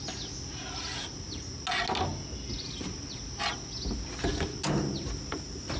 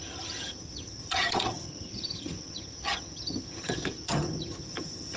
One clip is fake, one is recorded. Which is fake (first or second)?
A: second